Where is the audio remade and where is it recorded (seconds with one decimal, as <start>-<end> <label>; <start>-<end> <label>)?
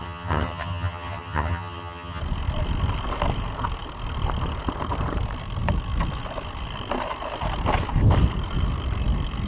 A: 0.0-2.2 remade; 2.2-9.5 recorded